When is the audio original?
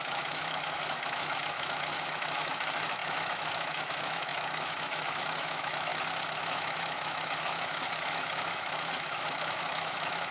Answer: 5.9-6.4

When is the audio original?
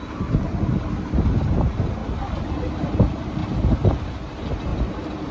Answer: 0.0-3.4; 4.0-5.3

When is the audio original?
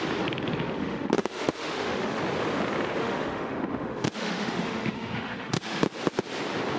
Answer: 0.0-0.8; 2.2-3.0; 5.8-6.8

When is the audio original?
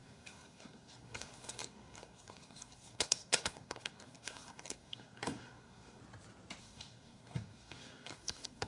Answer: 6.0-6.6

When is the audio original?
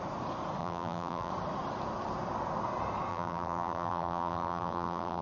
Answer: 0.0-0.6; 1.3-3.1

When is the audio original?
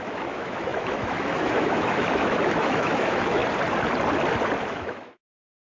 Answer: 3.4-4.6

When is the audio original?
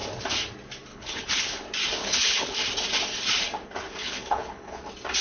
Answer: 0.0-0.9; 1.6-2.0; 2.6-4.0; 4.8-5.2